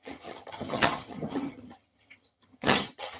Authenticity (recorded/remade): remade